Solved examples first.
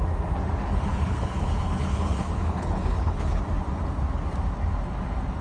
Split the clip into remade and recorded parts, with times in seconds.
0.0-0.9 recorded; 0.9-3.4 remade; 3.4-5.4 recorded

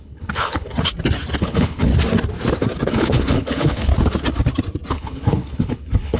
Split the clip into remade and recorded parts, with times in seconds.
0.0-0.7 remade; 0.7-1.4 recorded; 1.4-1.9 remade; 1.9-2.9 recorded; 2.9-3.9 remade; 3.9-4.9 recorded; 4.9-6.2 remade

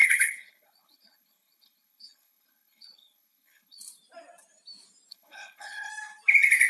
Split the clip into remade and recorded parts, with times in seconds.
0.0-3.8 remade; 3.8-5.1 recorded; 5.1-5.9 remade; 5.9-6.7 recorded

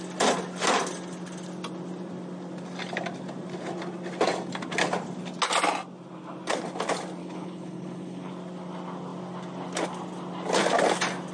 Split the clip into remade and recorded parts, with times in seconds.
0.0-7.2 recorded; 7.2-8.3 remade; 8.3-11.3 recorded

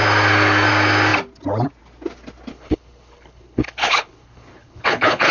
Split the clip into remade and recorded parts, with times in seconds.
0.0-2.5 recorded; 2.5-5.3 remade